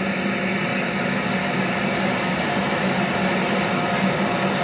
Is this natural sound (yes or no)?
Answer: yes